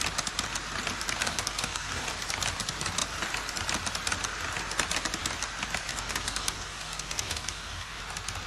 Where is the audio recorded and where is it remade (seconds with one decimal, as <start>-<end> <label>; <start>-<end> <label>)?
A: 0.0-1.2 recorded; 1.2-2.1 remade; 2.1-5.9 recorded; 5.9-8.0 remade; 8.0-8.5 recorded